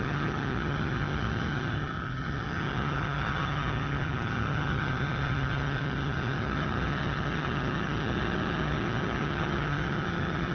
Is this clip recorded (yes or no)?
no